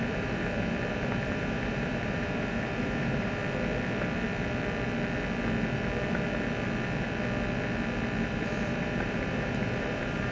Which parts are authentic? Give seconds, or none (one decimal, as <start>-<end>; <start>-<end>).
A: 3.4-8.3